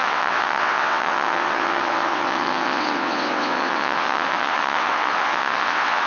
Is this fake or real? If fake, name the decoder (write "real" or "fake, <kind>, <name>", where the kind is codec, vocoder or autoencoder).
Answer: fake, vocoder, WaveNeXt